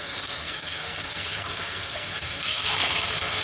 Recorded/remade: remade